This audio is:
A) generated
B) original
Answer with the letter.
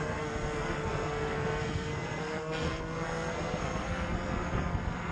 A